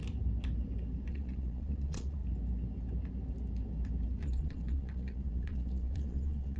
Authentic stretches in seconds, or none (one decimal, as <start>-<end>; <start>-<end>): 0.0-1.1; 2.2-4.2